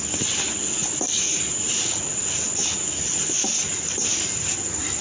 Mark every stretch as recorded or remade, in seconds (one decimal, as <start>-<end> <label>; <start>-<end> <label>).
0.0-5.0 recorded